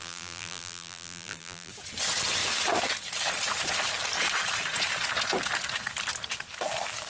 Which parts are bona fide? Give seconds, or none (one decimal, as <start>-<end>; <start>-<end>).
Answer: 1.7-7.1